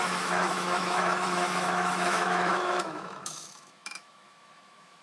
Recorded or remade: remade